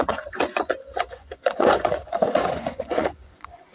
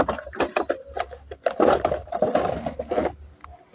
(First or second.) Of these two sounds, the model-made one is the first